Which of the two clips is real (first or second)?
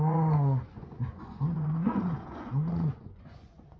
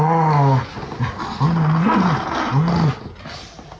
second